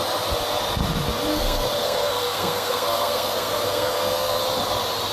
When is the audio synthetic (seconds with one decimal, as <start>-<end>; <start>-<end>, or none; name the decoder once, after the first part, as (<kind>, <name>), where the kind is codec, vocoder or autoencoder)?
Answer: 1.3-4.4 (codec, SNAC)